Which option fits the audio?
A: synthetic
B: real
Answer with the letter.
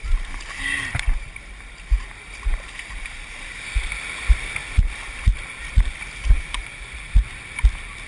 B